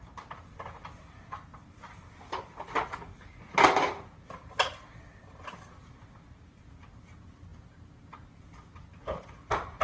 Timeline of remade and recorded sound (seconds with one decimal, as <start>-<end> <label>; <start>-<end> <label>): 0.0-9.8 recorded